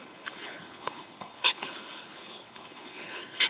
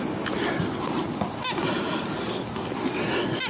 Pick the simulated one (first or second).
first